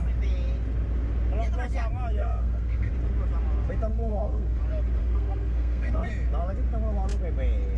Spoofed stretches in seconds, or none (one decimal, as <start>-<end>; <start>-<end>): 2.2-2.9; 3.9-4.6; 5.0-6.1